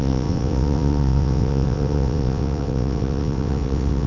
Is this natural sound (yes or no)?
no